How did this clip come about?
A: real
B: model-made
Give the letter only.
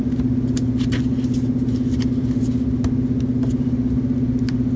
A